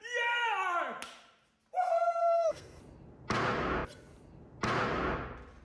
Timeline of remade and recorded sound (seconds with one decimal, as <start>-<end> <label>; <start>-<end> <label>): 0.0-2.2 recorded; 2.2-2.8 remade; 2.8-5.6 recorded

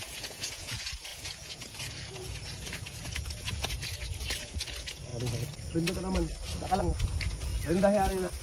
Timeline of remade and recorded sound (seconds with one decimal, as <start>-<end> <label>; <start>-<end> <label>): 0.0-5.1 remade; 5.1-6.8 recorded; 6.8-7.5 remade; 7.5-8.4 recorded

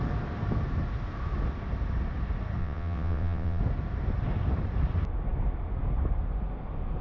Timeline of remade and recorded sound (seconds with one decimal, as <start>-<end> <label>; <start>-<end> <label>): 0.0-2.6 recorded; 2.6-3.6 remade; 3.6-7.0 recorded

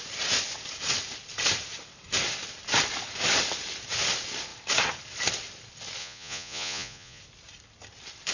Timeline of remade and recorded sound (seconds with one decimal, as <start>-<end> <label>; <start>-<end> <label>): 0.0-6.0 recorded; 6.0-7.2 remade; 7.2-8.3 recorded

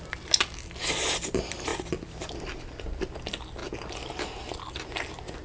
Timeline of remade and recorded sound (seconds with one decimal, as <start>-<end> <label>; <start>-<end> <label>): 0.0-5.4 recorded

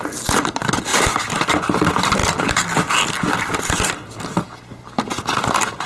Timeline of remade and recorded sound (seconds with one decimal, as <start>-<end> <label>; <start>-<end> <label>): 0.0-5.9 recorded

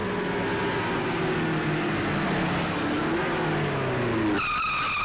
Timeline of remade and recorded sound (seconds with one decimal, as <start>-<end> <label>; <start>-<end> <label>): 0.0-5.0 recorded

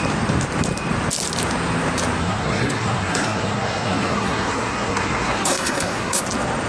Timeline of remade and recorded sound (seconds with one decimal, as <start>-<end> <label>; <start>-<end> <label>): 0.0-2.2 recorded; 2.2-6.2 remade; 6.2-6.7 recorded